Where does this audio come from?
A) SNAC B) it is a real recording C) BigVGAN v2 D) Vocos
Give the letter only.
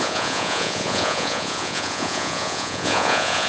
D